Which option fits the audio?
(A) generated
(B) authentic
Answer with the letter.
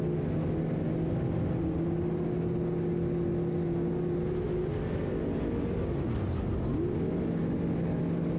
B